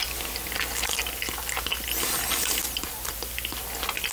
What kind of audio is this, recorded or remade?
recorded